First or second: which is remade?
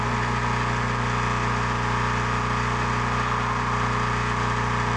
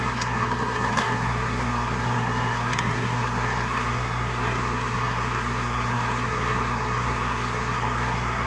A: second